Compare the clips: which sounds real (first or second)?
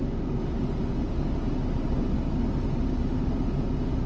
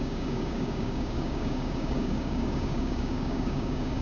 first